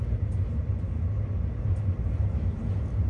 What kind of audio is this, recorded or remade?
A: recorded